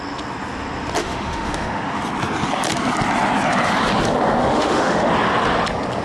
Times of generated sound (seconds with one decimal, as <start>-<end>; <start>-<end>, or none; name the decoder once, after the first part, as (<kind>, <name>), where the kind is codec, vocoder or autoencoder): 1.0-2.0 (autoencoder, DAC-VAE); 4.4-5.1